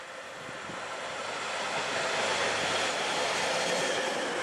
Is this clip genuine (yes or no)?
yes